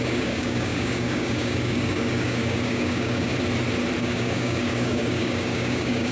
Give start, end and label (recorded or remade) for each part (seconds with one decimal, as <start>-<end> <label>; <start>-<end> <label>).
0.0-3.3 remade; 3.3-4.0 recorded; 4.0-6.1 remade